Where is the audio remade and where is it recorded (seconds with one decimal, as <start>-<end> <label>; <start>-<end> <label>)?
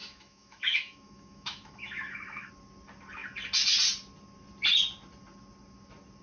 0.0-2.5 remade; 2.5-6.2 recorded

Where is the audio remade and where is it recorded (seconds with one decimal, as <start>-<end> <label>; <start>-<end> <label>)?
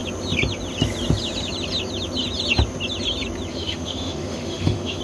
0.0-3.5 recorded; 3.5-5.0 remade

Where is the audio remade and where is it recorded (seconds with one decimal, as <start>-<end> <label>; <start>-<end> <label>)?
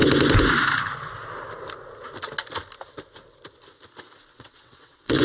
0.0-4.3 recorded; 4.3-5.2 remade